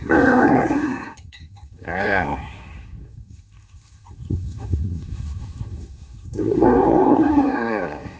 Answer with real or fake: fake